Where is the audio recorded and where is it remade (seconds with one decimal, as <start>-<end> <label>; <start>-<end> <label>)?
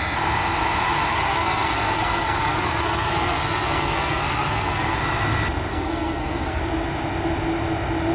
0.0-1.1 recorded; 1.1-5.0 remade; 5.0-5.7 recorded; 5.7-6.6 remade; 6.6-8.1 recorded